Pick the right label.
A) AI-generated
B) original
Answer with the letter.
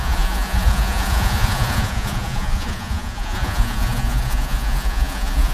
A